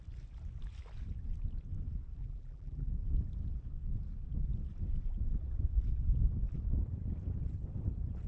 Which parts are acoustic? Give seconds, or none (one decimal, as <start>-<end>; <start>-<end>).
0.0-2.2; 2.9-8.3

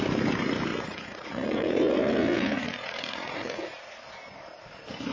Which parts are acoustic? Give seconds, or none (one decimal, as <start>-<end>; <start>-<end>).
0.0-0.7; 3.8-5.1

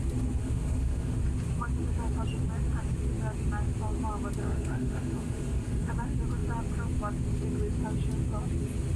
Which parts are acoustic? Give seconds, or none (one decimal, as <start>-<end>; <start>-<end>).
0.0-0.4; 1.2-4.4; 5.9-9.0

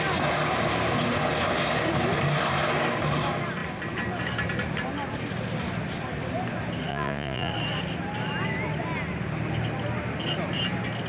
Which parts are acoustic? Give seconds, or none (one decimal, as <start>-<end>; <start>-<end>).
0.0-6.9; 7.5-11.1

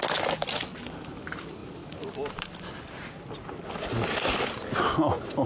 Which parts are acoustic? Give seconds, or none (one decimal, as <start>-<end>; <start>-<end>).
0.0-5.5

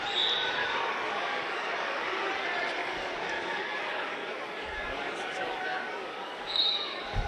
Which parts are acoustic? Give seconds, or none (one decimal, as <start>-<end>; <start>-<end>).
0.0-0.6; 2.3-2.8

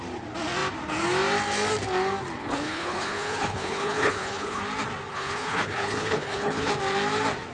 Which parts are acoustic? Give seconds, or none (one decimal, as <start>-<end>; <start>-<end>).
0.0-2.4; 4.6-5.1; 6.7-7.5